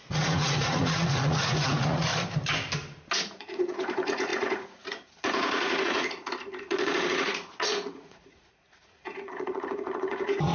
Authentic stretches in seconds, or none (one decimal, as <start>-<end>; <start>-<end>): 2.1-3.2

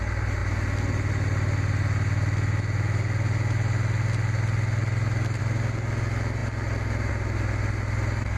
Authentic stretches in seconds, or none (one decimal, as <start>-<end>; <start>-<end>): 0.0-8.4

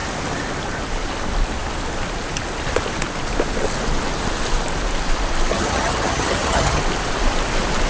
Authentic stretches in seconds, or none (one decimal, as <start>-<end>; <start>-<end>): 0.0-5.5; 6.8-7.9